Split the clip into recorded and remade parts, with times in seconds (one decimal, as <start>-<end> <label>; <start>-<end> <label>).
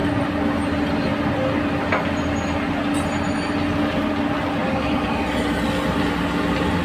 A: 0.0-4.6 recorded; 4.6-5.3 remade; 5.3-6.8 recorded